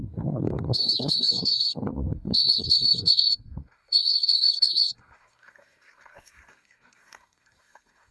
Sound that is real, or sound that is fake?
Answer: fake